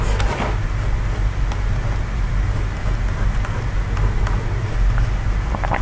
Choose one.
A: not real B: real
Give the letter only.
B